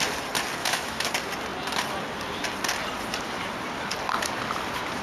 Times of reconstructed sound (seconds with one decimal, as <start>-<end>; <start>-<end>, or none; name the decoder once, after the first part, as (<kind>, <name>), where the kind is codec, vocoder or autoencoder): 0.6-1.1 (autoencoder, DAC-VAE)